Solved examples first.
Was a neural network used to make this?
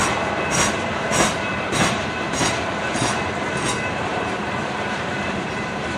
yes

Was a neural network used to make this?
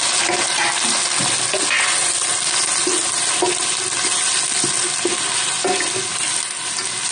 no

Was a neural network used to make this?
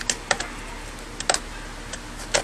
no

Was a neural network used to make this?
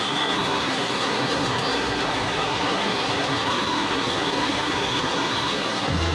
yes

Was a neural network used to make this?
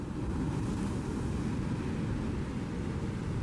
no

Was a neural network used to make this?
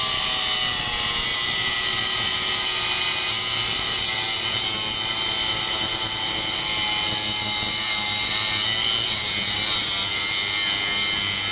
no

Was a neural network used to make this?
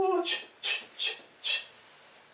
no